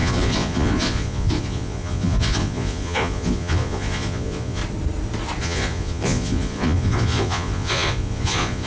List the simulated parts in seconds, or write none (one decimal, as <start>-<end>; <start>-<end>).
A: 0.0-4.6; 5.4-8.7